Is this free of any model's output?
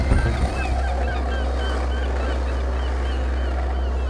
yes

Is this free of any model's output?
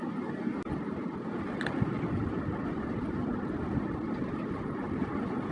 yes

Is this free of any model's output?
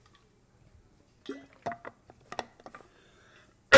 yes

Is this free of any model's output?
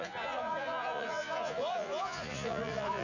no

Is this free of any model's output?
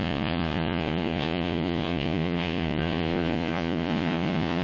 no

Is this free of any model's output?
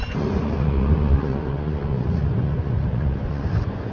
no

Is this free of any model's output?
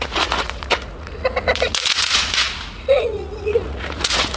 no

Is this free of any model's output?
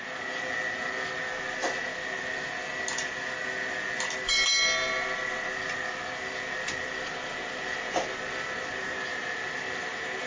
yes